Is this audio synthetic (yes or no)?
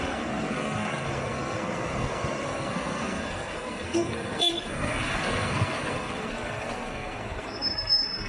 yes